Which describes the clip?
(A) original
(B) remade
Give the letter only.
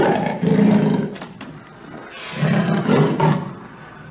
A